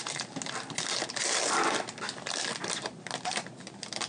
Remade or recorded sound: recorded